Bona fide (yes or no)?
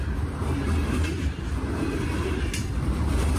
no